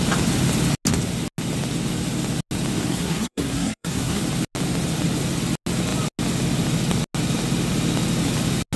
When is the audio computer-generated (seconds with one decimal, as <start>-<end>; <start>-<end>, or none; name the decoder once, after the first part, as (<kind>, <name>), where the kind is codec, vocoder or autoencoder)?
2.9-4.2 (codec, SNAC)